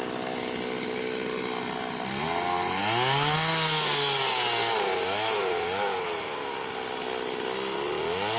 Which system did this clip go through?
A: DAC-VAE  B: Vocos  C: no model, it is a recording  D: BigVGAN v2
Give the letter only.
C